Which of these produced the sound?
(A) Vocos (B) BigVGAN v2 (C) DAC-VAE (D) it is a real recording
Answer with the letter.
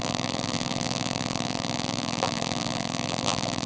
B